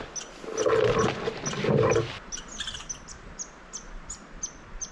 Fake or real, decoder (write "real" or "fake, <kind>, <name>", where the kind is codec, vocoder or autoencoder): real